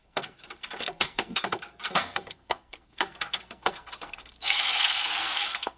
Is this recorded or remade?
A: remade